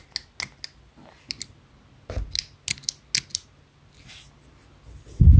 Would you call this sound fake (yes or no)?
no